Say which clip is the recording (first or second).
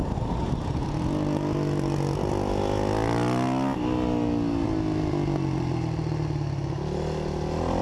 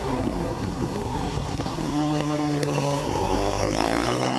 first